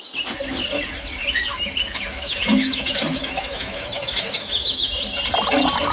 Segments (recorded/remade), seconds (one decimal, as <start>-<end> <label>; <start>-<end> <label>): 0.0-1.5 recorded; 1.5-5.0 remade; 5.0-5.9 recorded